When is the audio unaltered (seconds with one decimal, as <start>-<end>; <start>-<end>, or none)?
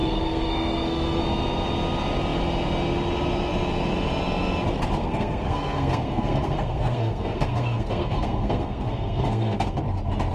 1.2-5.0; 9.8-10.3